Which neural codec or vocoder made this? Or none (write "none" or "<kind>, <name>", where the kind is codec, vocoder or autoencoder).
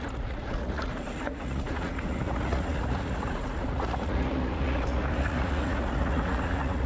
vocoder, Vocos